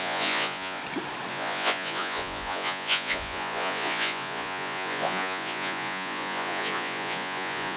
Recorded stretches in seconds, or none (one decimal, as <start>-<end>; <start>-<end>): 0.8-1.3